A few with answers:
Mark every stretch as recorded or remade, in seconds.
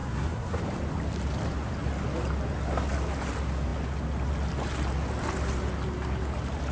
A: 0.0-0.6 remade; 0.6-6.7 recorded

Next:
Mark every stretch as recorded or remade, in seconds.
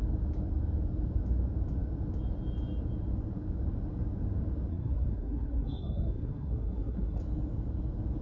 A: 0.0-4.7 recorded; 4.7-7.2 remade; 7.2-8.2 recorded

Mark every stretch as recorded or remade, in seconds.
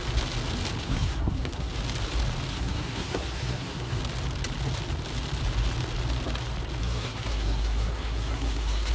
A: 0.0-0.8 recorded; 0.8-1.7 remade; 1.7-2.5 recorded; 2.5-4.0 remade; 4.0-6.8 recorded; 6.8-8.9 remade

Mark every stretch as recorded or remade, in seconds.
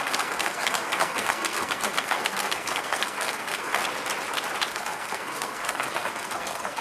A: 0.0-3.8 remade; 3.8-4.7 recorded; 4.7-6.8 remade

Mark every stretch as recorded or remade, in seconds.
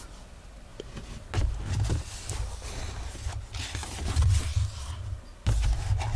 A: 0.0-6.2 recorded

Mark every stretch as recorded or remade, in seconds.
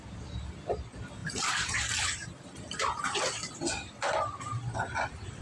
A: 0.0-5.4 recorded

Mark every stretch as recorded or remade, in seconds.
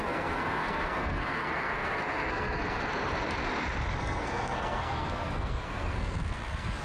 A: 0.0-2.9 remade; 2.9-4.0 recorded; 4.0-6.8 remade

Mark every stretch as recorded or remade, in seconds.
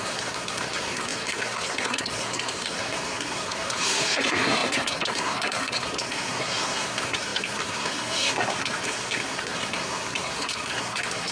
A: 0.0-11.3 remade